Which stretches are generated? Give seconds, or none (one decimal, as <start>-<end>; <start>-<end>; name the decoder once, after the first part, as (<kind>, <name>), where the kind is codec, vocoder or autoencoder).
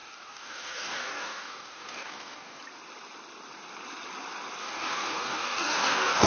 0.0-2.6 (codec, DAC); 4.6-6.3